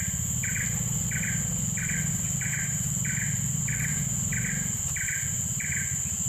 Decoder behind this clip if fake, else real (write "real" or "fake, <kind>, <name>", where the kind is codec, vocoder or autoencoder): real